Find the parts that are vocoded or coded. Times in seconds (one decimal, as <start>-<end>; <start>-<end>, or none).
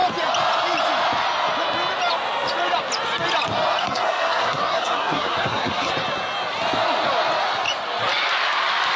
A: 3.8-5.9